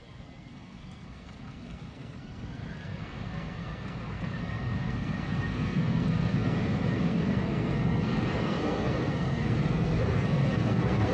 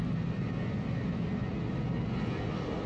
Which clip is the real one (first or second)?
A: second